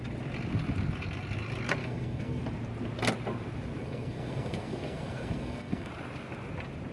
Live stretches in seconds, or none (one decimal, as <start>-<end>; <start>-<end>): 0.0-1.8; 2.4-3.8; 5.9-6.9